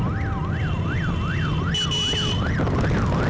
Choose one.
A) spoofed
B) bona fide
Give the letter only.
B